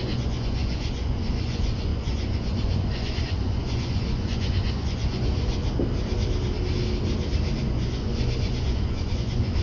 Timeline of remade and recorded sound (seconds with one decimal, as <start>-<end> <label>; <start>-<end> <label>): 0.0-5.6 remade; 5.6-7.6 recorded; 7.6-9.6 remade